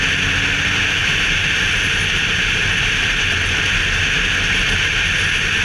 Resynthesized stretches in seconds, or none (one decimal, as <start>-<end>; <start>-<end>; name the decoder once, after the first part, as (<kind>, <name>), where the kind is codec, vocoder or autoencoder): 1.0-3.3 (vocoder, BigVGAN v2)